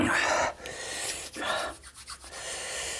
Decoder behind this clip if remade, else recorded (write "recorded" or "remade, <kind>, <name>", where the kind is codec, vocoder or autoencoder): recorded